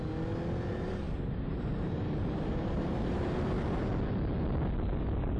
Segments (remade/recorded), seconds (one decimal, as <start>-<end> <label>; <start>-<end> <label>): 0.0-0.7 recorded; 0.7-3.9 remade; 3.9-5.4 recorded